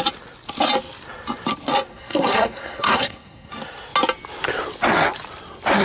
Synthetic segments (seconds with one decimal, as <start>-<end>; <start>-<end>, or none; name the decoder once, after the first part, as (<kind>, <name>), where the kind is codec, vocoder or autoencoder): 1.9-3.5 (codec, SNAC)